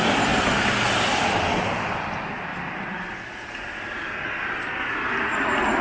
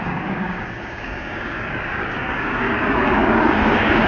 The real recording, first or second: first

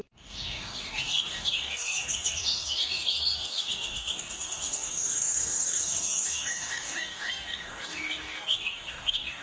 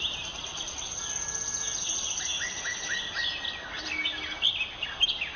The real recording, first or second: second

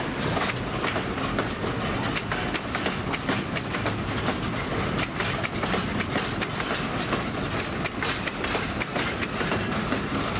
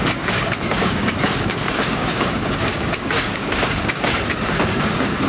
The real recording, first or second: first